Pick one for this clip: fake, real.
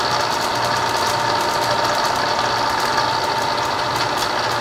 real